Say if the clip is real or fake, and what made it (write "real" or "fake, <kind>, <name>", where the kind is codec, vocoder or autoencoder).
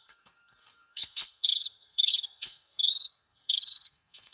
fake, codec, SNAC